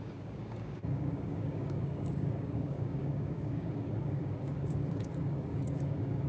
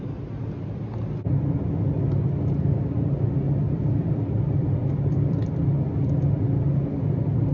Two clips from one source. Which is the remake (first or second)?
first